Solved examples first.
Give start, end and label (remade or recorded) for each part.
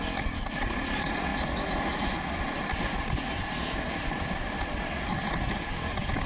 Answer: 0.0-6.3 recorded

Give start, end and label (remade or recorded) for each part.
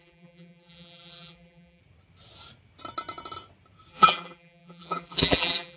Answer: 0.0-1.8 remade; 1.8-3.9 recorded; 3.9-5.8 remade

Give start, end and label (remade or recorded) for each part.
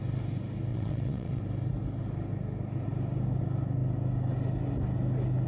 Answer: 0.0-0.7 recorded; 0.7-1.4 remade; 1.4-5.5 recorded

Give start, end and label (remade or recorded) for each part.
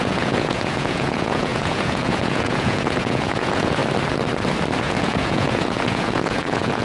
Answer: 0.0-3.8 remade; 3.8-4.8 recorded; 4.8-6.8 remade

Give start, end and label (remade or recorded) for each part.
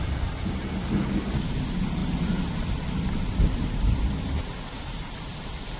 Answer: 0.0-2.0 recorded; 2.0-5.8 remade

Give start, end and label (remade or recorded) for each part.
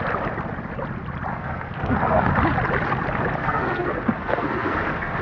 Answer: 0.0-1.3 recorded; 1.3-2.3 remade; 2.3-3.4 recorded; 3.4-5.2 remade